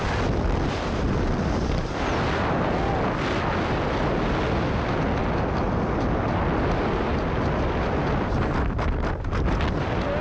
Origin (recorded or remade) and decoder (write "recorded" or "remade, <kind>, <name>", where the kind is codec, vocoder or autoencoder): recorded